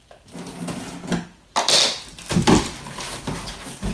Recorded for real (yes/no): yes